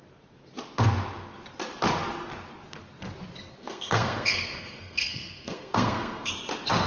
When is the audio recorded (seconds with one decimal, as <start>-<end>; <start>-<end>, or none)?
0.0-3.5; 6.3-6.9